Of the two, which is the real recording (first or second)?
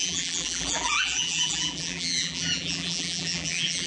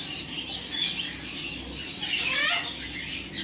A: second